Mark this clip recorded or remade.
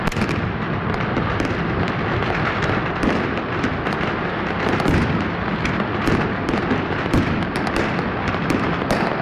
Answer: recorded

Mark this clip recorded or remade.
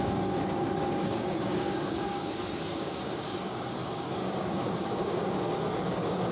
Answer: remade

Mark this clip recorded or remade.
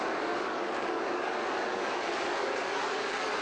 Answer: remade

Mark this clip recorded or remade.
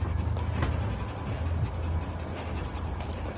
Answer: recorded